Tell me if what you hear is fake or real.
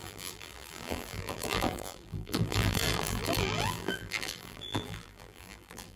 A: fake